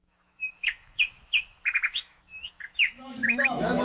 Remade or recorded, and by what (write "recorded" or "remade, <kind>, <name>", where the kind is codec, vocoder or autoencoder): remade, autoencoder, DAC-VAE